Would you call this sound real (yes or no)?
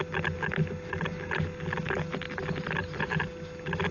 yes